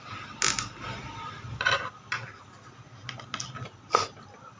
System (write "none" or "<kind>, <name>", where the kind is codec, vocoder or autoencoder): none